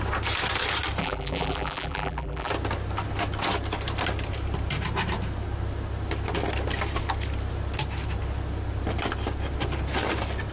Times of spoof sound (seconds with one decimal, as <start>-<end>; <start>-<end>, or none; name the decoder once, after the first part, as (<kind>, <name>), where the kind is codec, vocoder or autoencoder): 1.0-2.5 (vocoder, BigVGAN v2)